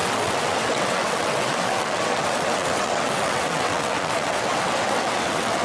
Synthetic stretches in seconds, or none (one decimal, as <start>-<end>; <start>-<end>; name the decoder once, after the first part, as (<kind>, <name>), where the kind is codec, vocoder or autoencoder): 0.0-5.6 (vocoder, WaveNeXt)